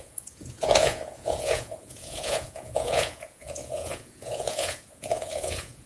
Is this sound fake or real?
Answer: fake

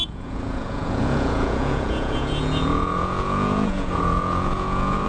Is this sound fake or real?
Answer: fake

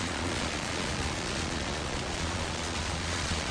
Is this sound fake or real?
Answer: fake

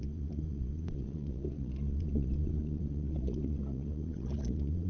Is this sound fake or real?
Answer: fake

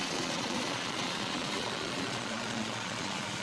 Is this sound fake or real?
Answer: fake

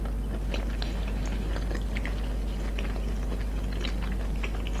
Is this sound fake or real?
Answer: real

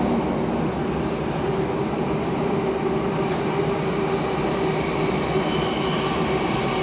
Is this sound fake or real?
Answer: real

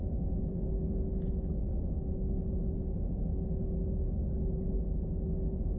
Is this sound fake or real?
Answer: real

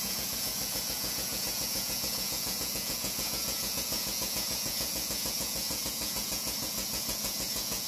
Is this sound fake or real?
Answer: fake